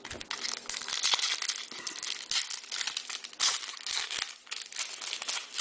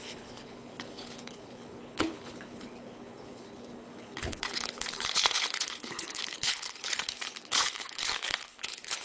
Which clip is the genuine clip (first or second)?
first